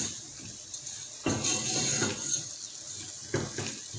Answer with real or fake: real